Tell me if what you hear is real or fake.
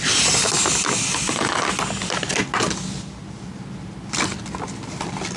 real